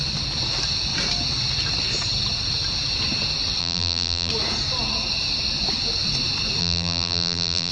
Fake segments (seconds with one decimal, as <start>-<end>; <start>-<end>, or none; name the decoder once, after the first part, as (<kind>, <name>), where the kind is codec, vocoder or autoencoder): 3.6-4.3 (vocoder, BigVGAN v2); 6.6-7.7